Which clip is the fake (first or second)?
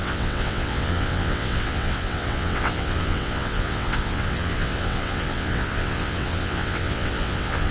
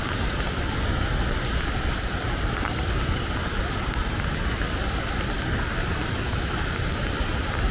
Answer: first